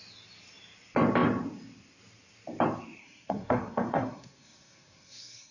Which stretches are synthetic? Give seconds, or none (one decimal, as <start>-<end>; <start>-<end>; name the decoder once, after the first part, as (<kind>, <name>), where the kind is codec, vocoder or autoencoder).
3.0-5.5 (codec, SNAC)